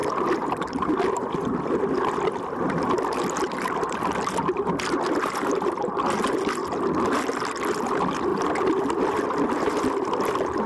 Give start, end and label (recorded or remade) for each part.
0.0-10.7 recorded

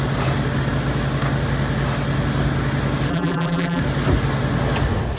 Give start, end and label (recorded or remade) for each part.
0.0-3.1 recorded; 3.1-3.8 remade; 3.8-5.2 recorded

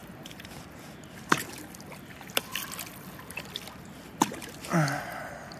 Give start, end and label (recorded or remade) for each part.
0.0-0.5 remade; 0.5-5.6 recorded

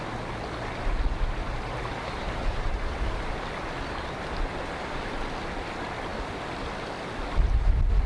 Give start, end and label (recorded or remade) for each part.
0.0-1.4 recorded; 1.4-3.3 remade; 3.3-8.1 recorded

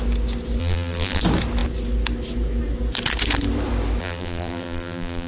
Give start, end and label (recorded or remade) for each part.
0.0-0.6 recorded; 0.6-1.2 remade; 1.2-4.0 recorded; 4.0-5.3 remade

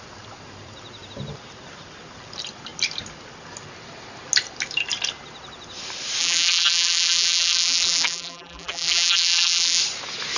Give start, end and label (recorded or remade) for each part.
0.0-6.2 recorded; 6.2-9.8 remade; 9.8-10.4 recorded